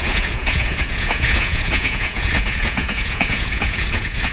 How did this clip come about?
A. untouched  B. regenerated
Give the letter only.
B